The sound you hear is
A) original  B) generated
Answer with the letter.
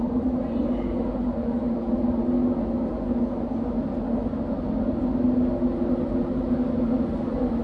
A